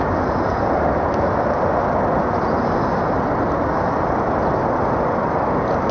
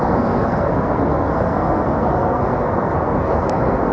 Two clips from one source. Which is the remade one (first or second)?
second